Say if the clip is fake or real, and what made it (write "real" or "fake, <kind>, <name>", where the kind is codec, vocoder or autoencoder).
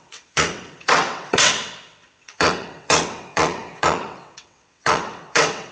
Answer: fake, vocoder, WaveNeXt